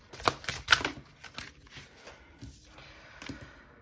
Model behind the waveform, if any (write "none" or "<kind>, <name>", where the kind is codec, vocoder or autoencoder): none